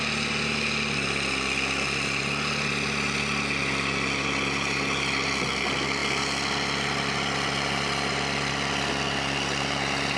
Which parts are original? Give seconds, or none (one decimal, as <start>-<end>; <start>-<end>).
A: 0.0-10.2